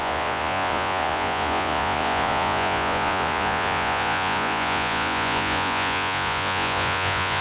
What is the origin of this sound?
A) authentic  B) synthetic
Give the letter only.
B